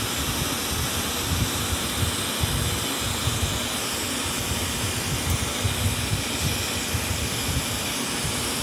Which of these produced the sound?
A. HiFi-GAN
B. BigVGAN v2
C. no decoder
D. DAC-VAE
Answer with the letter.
C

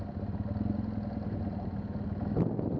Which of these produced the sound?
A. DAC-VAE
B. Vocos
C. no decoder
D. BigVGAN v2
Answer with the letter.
C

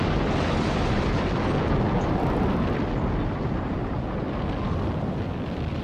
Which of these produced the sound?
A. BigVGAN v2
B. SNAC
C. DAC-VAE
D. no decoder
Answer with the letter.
D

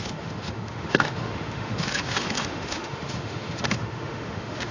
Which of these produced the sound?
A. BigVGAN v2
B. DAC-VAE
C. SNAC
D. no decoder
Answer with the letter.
B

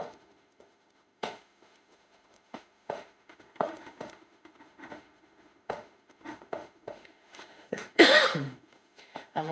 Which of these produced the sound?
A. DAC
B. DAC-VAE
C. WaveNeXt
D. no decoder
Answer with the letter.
B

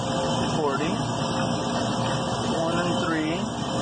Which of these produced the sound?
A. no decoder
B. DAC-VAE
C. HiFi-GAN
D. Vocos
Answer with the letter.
A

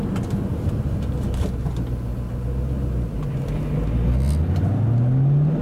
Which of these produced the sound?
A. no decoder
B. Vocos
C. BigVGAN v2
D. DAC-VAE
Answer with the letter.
A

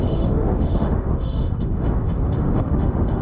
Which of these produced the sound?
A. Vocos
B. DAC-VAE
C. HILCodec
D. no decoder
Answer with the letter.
B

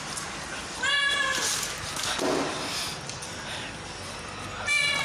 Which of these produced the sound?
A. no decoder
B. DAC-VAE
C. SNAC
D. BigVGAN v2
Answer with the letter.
A